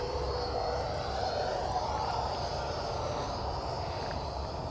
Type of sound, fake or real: real